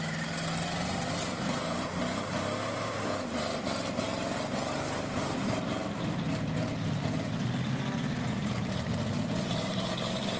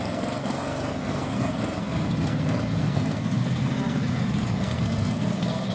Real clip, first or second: first